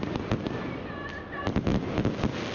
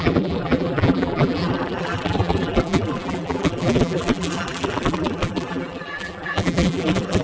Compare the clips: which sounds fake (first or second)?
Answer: second